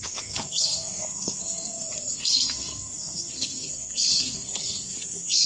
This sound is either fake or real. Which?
fake